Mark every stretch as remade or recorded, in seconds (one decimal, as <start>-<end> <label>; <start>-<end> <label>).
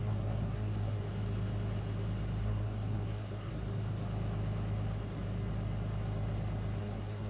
0.0-1.0 remade; 1.0-2.4 recorded; 2.4-3.5 remade; 3.5-6.8 recorded; 6.8-7.3 remade